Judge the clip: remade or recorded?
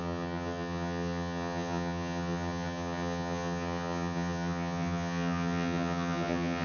remade